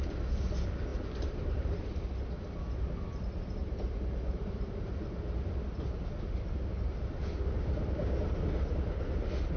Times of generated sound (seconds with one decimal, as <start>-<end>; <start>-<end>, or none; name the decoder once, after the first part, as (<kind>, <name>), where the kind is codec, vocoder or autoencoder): 0.9-2.0 (vocoder, BigVGAN v2); 3.6-4.5